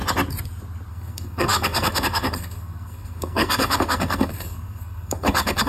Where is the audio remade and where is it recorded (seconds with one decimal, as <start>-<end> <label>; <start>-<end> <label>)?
0.0-0.9 recorded; 0.9-5.7 remade